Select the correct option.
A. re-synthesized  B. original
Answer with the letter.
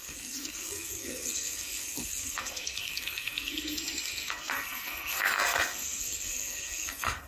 A